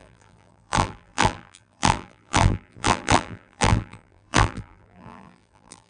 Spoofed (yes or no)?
yes